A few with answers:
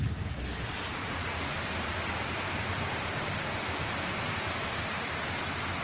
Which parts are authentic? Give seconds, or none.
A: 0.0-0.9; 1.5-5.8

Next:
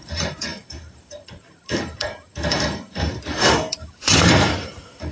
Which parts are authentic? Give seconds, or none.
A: none

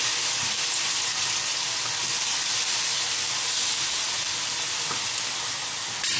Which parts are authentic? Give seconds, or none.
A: 0.0-6.2

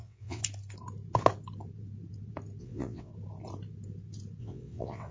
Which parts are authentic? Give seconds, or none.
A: 0.4-2.6; 3.1-4.4

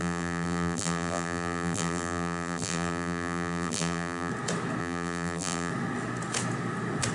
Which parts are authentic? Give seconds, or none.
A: 4.3-4.8; 5.7-7.1

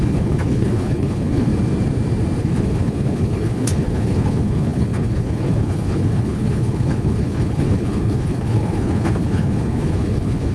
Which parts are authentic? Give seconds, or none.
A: 1.5-2.4

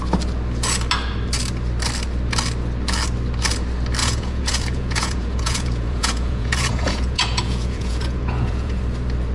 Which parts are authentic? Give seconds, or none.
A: 0.0-4.0; 8.8-9.3